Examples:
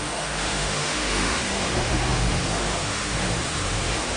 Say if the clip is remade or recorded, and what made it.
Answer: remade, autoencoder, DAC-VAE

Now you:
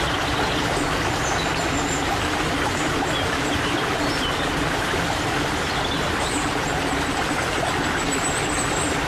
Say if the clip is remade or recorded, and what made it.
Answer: recorded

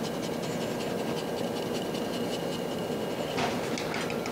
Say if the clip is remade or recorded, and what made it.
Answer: recorded